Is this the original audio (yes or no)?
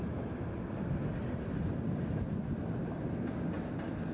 yes